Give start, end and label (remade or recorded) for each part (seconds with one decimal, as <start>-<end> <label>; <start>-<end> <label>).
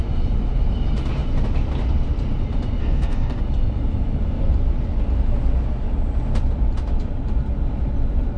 0.0-2.8 recorded; 2.8-3.4 remade; 3.4-8.4 recorded